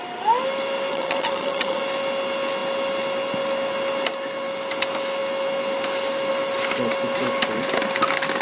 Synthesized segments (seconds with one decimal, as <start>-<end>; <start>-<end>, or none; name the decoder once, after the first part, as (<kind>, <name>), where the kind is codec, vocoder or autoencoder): 0.9-1.8 (vocoder, HiFi-GAN)